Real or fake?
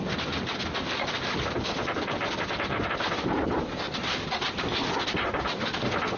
real